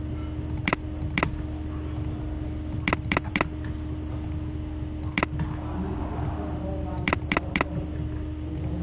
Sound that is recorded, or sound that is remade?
recorded